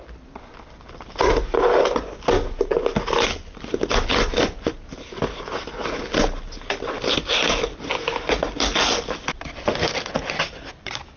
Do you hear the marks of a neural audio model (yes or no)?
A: no